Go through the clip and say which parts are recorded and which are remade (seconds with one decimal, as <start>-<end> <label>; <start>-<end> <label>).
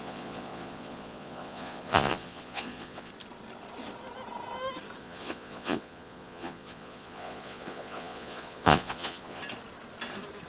0.0-3.1 remade; 3.1-5.0 recorded; 5.0-9.4 remade; 9.4-10.5 recorded